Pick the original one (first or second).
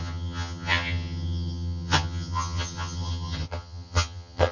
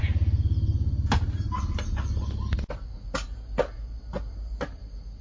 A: second